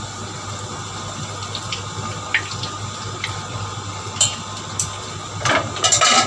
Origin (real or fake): fake